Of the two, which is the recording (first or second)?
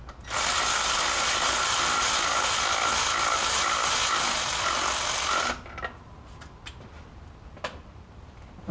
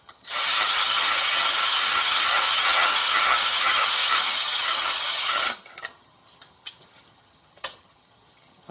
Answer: first